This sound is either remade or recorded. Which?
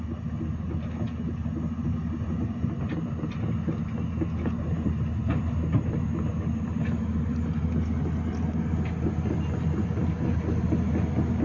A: recorded